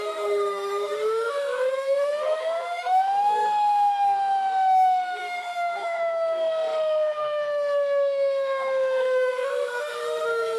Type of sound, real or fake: fake